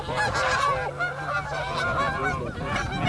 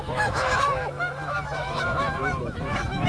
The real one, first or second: first